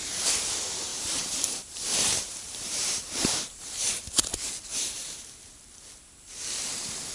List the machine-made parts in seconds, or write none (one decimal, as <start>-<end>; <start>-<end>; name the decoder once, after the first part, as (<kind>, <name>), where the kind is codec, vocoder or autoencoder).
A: 0.9-3.8 (vocoder, BigVGAN v2); 4.7-5.4